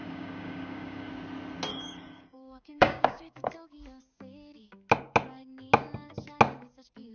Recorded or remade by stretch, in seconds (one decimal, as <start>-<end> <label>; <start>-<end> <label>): 0.0-1.1 remade; 1.1-1.7 recorded; 1.7-3.5 remade; 3.5-7.1 recorded